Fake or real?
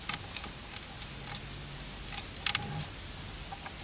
real